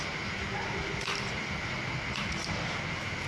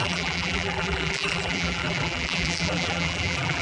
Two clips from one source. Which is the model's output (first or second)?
second